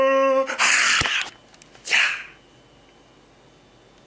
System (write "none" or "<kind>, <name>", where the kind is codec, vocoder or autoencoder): none